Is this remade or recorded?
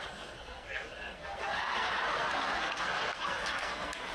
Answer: remade